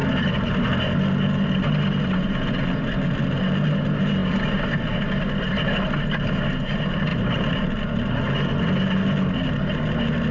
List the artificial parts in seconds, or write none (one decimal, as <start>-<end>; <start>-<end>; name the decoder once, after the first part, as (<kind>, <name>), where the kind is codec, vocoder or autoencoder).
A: 7.1-8.7 (vocoder, BigVGAN v2)